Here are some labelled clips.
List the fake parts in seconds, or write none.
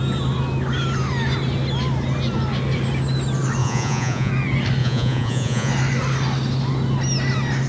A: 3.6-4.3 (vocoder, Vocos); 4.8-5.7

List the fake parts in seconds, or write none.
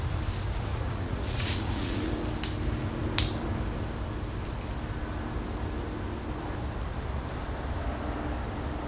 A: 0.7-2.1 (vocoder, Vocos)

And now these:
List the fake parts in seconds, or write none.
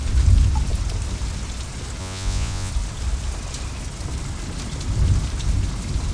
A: 2.0-2.7 (vocoder, Vocos)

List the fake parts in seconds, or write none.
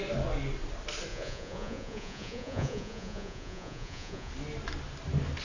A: 1.1-4.3 (vocoder, Vocos)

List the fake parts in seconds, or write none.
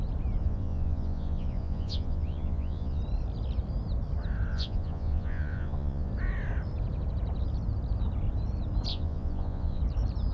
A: 0.4-3.0 (vocoder, Vocos); 4.5-6.1; 8.9-9.8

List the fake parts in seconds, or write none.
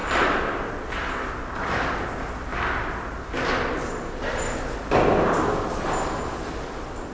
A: none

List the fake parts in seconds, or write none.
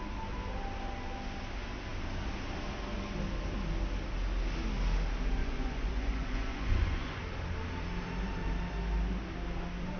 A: 5.4-7.2 (vocoder, Vocos)